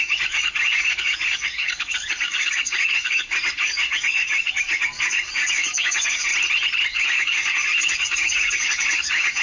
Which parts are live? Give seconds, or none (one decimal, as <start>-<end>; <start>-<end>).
6.3-6.9